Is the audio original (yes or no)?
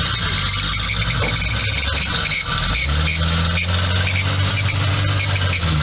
yes